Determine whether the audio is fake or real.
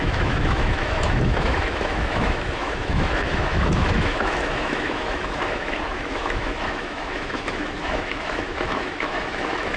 fake